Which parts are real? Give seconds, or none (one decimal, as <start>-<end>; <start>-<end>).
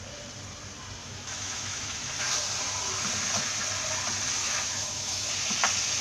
0.0-1.0; 2.3-4.4; 5.3-6.0